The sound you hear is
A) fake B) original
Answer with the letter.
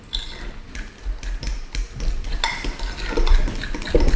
B